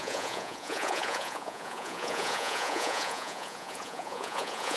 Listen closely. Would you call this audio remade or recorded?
remade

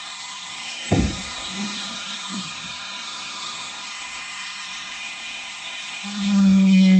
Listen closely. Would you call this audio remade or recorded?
remade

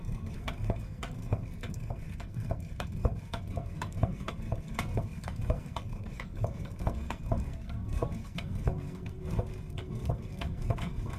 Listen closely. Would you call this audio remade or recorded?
remade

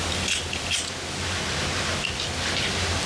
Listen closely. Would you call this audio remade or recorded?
recorded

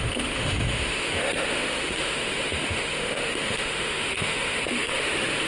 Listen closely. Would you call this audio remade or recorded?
remade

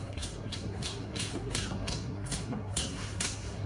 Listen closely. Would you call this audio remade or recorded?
remade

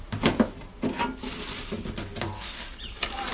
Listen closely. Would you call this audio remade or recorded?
recorded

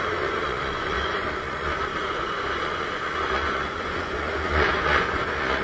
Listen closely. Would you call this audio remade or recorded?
remade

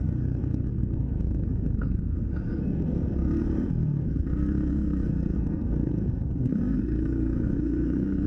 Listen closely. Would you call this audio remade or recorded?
remade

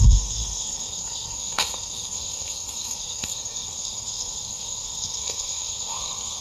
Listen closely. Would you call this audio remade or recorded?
remade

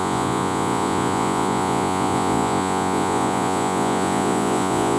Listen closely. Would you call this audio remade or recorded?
remade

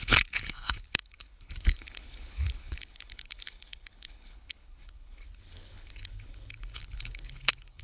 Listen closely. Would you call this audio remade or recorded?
remade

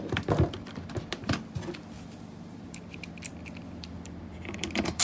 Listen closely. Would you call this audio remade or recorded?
remade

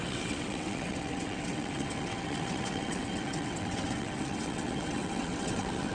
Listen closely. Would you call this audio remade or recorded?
remade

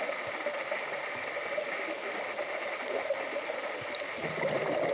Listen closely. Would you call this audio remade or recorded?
recorded